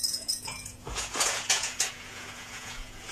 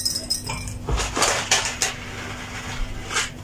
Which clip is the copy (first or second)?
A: first